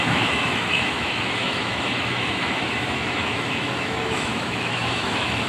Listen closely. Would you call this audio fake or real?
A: fake